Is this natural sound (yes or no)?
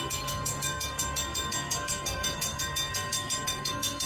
no